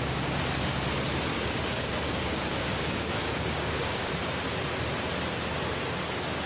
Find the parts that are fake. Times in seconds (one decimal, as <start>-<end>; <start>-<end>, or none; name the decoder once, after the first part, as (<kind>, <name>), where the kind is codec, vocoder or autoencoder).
1.3-4.1 (codec, DAC)